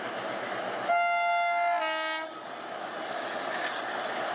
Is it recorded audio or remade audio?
recorded